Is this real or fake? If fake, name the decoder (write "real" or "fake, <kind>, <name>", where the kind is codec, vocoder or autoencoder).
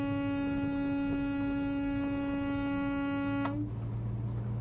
real